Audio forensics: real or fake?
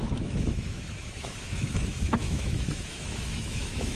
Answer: fake